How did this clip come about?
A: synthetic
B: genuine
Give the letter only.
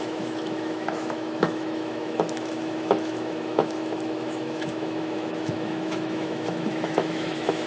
A